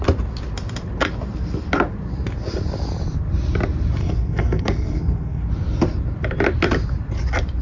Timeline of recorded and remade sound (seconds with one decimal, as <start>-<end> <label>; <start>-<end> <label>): 0.0-4.0 recorded; 4.0-5.4 remade; 5.4-7.6 recorded

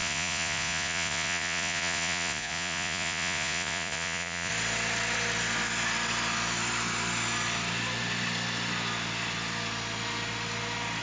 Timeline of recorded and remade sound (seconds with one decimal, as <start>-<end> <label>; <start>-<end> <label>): 0.0-4.5 remade; 4.5-11.0 recorded

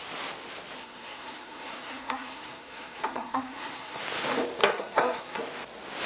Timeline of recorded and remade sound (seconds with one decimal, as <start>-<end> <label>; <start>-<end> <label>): 0.0-0.8 recorded; 0.8-4.0 remade; 4.0-4.6 recorded; 4.6-5.4 remade; 5.4-6.1 recorded

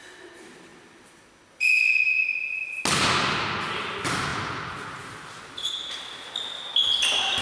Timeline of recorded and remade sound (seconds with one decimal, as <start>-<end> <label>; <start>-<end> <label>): 0.0-7.4 recorded

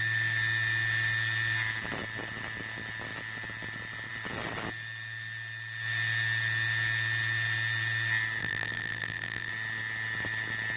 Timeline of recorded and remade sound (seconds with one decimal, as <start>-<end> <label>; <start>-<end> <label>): 0.0-8.4 recorded; 8.4-9.5 remade; 9.5-10.8 recorded

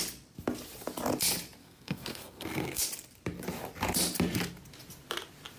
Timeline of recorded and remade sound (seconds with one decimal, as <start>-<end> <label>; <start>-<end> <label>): 0.0-1.6 recorded; 1.6-2.8 remade; 2.8-5.6 recorded

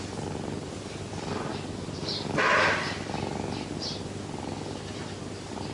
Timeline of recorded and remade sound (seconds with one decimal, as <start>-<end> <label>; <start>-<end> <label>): 0.0-5.7 recorded

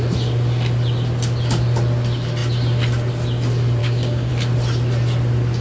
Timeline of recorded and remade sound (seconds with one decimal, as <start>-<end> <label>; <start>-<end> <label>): 0.0-3.8 recorded; 3.8-4.3 remade; 4.3-5.6 recorded